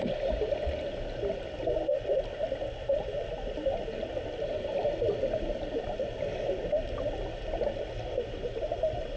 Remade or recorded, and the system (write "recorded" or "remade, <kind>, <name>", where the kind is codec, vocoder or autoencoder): recorded